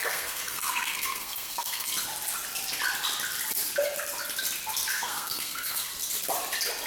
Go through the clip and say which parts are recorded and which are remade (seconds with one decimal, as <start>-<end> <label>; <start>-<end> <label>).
0.0-1.9 remade; 1.9-4.9 recorded; 4.9-5.9 remade; 5.9-6.9 recorded